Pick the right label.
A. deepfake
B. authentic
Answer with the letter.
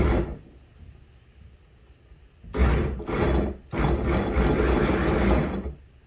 B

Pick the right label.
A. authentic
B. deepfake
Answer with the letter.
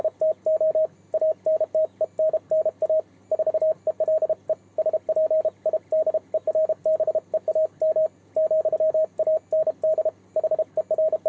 A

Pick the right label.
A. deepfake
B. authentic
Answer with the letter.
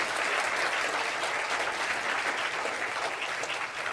B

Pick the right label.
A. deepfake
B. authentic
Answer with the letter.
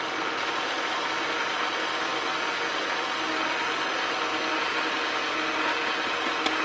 B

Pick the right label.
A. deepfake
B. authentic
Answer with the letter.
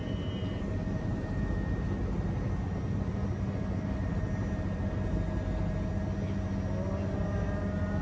B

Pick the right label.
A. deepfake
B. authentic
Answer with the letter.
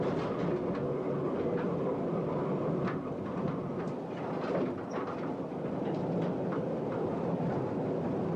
B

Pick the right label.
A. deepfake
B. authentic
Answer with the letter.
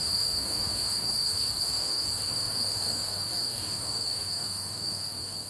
A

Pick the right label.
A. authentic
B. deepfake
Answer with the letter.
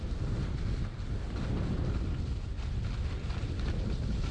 A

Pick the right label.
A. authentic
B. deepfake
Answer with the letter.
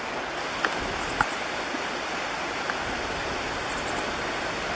A